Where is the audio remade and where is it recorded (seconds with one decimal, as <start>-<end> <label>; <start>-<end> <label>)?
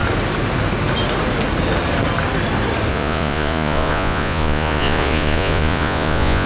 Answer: 0.0-2.9 recorded; 2.9-6.5 remade